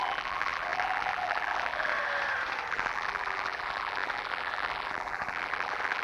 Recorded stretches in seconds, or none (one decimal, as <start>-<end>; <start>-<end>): 1.9-2.7